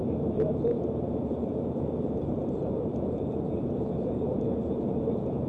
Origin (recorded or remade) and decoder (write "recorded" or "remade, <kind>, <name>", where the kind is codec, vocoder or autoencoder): remade, vocoder, BigVGAN v2